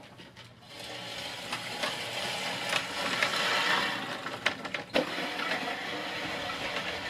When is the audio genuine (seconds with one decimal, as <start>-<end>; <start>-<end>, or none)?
0.0-7.1

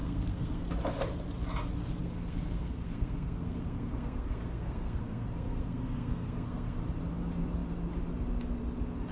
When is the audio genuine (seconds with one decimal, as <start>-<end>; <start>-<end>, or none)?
0.7-2.0; 6.8-9.1